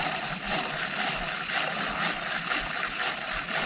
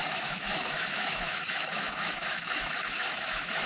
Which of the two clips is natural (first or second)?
first